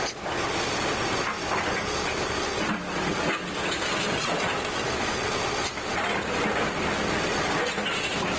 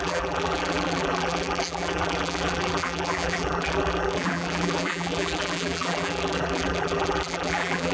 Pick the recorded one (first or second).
first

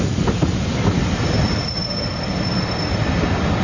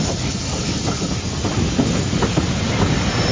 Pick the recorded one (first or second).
second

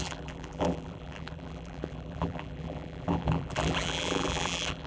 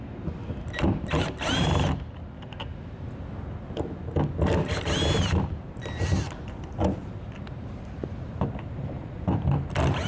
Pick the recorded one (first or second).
second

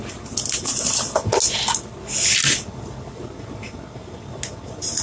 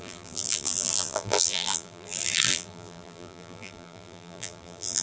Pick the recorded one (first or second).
first